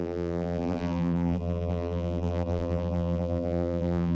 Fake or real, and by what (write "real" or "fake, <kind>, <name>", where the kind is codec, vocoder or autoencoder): fake, vocoder, BigVGAN v2